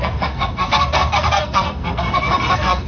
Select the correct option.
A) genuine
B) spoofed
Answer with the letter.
B